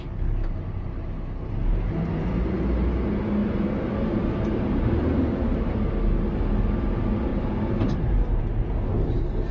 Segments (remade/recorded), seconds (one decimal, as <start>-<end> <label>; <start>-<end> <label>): 0.0-0.4 recorded; 0.4-1.0 remade; 1.0-3.4 recorded; 3.4-5.9 remade; 5.9-7.3 recorded; 7.3-8.4 remade; 8.4-9.5 recorded